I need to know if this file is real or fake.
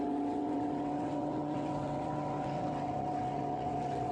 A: fake